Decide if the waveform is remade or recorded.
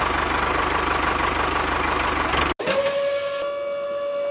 recorded